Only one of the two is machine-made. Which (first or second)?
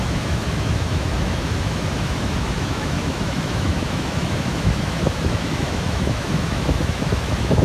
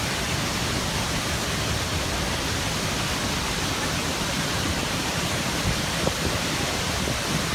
first